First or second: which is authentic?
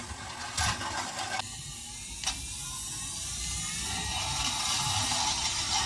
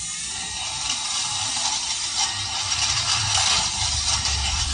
first